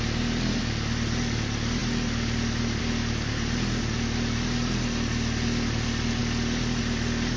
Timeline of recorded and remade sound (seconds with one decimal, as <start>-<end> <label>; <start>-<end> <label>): 0.0-7.4 recorded